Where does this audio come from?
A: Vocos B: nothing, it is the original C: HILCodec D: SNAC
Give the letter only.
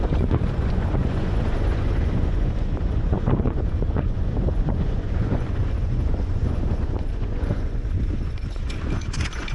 A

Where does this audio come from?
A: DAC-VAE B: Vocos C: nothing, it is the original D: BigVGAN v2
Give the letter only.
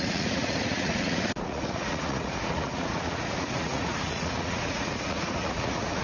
B